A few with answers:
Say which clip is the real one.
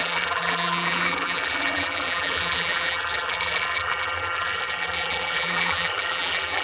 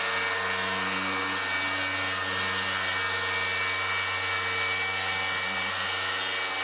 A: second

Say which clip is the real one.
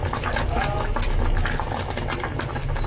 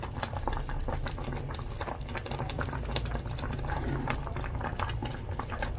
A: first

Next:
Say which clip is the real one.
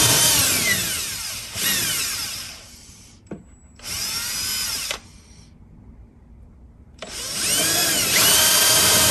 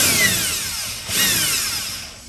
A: second